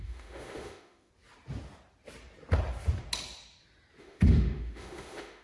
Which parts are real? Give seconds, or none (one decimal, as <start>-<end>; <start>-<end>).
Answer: 1.1-4.0